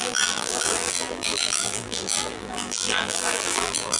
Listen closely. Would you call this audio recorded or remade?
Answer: remade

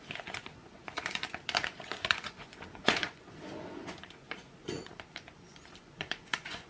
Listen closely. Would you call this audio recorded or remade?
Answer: remade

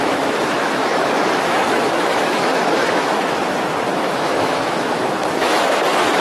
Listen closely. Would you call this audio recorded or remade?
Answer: remade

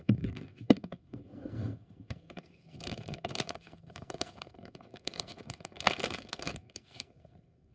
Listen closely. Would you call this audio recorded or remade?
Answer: remade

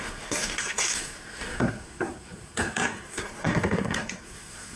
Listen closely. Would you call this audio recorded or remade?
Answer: remade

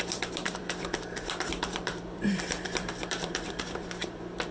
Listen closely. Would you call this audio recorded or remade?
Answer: remade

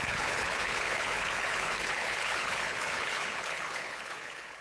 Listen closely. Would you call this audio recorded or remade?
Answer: remade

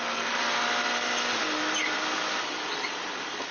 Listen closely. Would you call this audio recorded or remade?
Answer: recorded